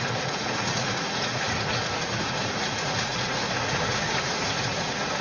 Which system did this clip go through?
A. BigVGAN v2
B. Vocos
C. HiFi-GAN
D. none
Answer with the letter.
B